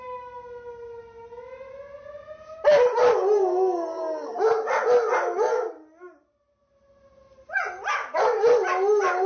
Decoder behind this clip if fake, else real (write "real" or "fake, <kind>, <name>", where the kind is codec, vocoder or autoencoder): real